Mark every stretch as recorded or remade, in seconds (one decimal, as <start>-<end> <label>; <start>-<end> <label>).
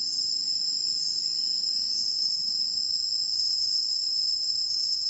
0.0-2.0 recorded; 2.0-2.5 remade; 2.5-3.3 recorded; 3.3-5.1 remade